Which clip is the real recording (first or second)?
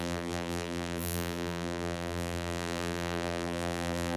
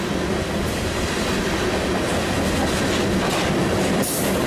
second